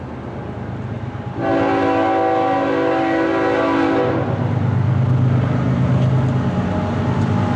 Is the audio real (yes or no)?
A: yes